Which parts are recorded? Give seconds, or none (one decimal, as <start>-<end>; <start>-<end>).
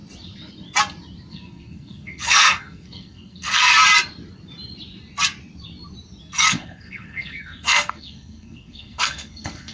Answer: 0.0-1.3; 3.7-6.2